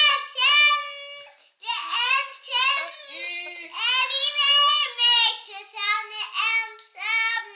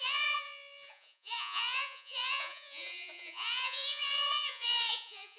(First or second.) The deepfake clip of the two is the second